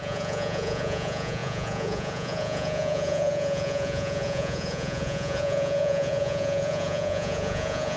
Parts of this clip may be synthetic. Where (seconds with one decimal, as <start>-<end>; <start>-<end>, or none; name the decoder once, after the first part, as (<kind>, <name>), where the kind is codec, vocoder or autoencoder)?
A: 0.0-8.0 (vocoder, Vocos)